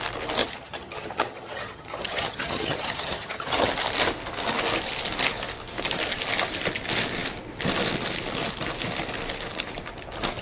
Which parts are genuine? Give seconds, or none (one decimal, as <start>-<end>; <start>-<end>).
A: 0.0-0.4; 3.7-10.4